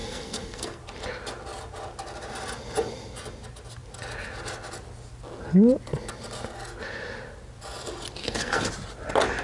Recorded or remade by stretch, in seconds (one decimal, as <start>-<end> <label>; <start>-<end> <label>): 0.0-0.8 remade; 0.8-8.2 recorded; 8.2-8.7 remade; 8.7-9.4 recorded